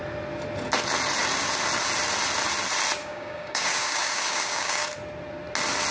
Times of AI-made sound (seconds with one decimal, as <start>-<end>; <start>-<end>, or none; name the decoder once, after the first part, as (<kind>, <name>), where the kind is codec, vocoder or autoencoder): 3.0-4.9 (codec, DAC)